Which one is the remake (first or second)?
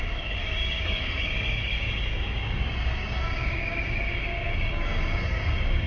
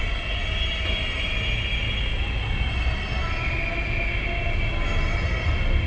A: first